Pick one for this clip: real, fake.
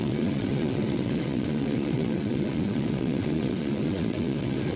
fake